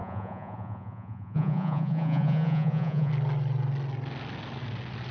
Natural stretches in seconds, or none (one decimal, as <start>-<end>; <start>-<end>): 3.1-5.1